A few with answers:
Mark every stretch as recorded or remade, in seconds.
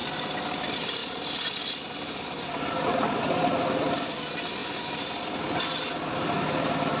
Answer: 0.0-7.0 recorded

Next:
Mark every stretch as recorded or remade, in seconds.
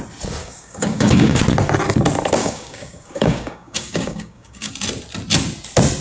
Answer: 0.0-0.4 recorded; 0.4-1.4 remade; 1.4-2.4 recorded; 2.4-4.7 remade; 4.7-6.0 recorded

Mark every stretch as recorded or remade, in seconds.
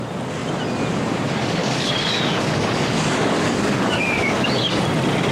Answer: 0.0-1.6 recorded; 1.6-4.8 remade; 4.8-5.3 recorded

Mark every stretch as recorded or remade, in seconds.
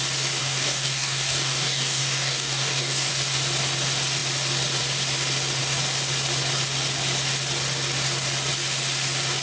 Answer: 0.0-0.4 recorded; 0.4-3.1 remade; 3.1-9.4 recorded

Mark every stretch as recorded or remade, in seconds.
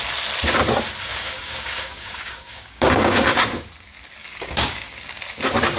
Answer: 0.0-1.1 recorded; 1.1-3.7 remade; 3.7-4.2 recorded; 4.2-5.2 remade; 5.2-5.8 recorded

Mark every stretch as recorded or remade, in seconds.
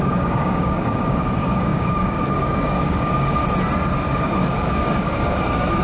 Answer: 0.0-3.4 remade; 3.4-4.2 recorded; 4.2-5.8 remade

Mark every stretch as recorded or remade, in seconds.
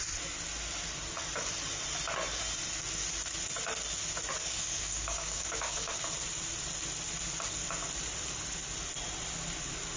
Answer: 0.0-4.4 recorded; 4.4-6.0 remade; 6.0-10.0 recorded